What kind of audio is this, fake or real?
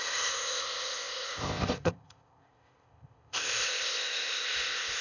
fake